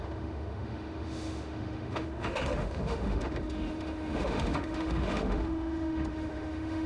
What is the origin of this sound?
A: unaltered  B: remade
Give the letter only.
B